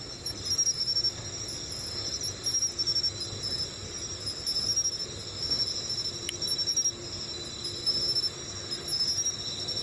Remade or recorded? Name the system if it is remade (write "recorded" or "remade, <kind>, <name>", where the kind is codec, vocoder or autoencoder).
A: recorded